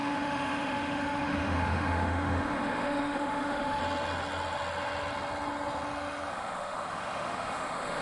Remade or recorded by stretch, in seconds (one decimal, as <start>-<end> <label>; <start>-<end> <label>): 0.0-3.8 remade; 3.8-6.3 recorded; 6.3-8.0 remade